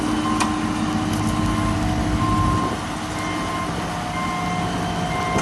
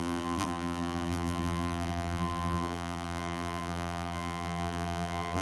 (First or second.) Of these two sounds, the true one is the first